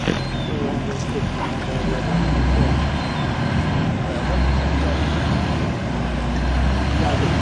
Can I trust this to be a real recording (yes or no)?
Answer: yes